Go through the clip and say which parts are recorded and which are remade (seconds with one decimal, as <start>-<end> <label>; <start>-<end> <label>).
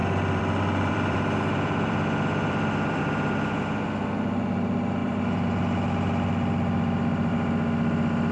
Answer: 0.0-3.0 remade; 3.0-5.0 recorded; 5.0-7.3 remade; 7.3-8.3 recorded